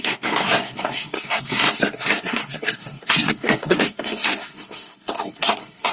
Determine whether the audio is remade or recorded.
remade